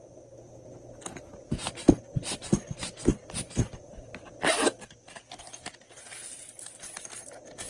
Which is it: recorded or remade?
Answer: recorded